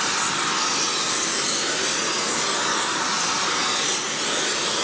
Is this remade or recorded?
recorded